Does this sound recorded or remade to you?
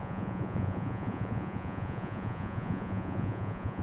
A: remade